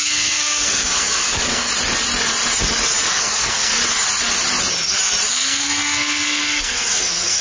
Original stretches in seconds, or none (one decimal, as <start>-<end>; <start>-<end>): 1.7-3.1; 3.8-5.3